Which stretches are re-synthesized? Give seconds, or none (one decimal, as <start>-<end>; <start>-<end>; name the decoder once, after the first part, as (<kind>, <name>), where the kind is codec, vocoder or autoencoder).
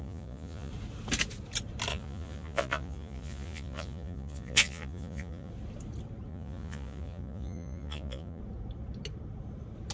0.0-0.7 (vocoder, Vocos); 1.9-5.5; 6.3-8.4